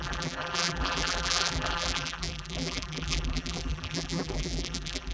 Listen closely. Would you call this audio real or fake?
fake